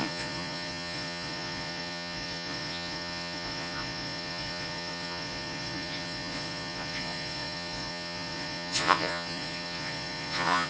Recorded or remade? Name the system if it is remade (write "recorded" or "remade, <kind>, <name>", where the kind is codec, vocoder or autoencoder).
remade, vocoder, Vocos